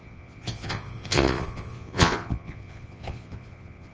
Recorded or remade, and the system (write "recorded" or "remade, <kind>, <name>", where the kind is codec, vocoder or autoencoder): remade, vocoder, Vocos